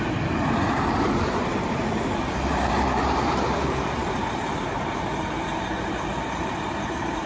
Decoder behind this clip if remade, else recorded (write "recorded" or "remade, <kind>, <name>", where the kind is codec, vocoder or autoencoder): remade, vocoder, BigVGAN v2